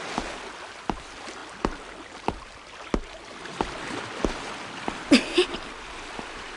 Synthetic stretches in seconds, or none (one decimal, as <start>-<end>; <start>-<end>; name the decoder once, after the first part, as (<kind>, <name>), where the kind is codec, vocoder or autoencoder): none